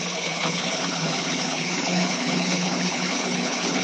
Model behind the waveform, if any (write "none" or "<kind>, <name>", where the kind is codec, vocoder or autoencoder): codec, HILCodec